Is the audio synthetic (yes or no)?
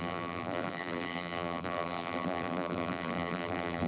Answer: yes